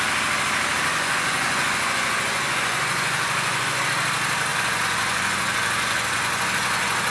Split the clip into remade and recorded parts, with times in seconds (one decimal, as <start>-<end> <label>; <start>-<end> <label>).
0.0-0.9 recorded; 0.9-3.8 remade; 3.8-4.5 recorded; 4.5-7.1 remade